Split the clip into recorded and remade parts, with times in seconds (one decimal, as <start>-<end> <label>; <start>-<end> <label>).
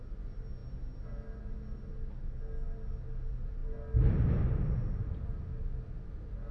0.0-6.5 recorded